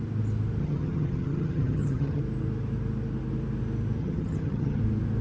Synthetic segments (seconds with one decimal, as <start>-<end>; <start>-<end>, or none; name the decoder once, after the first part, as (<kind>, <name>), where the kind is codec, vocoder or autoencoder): 0.6-2.2 (vocoder, HiFi-GAN); 4.0-4.8